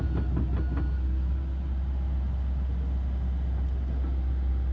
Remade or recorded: recorded